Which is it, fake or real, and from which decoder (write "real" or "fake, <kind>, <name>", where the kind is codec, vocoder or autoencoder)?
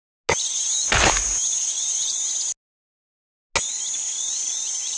real